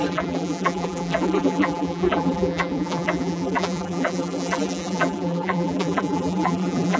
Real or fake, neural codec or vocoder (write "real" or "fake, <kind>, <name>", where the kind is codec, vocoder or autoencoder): fake, vocoder, BigVGAN v2